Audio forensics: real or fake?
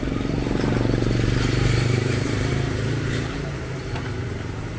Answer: fake